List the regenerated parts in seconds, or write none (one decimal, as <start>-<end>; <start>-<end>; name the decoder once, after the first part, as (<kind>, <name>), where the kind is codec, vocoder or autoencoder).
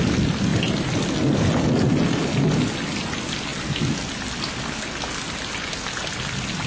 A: none